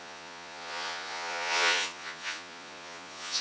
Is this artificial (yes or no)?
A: yes